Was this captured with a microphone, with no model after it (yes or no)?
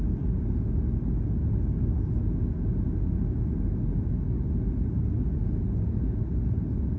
yes